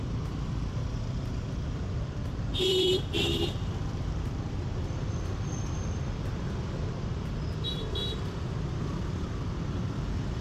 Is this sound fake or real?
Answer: fake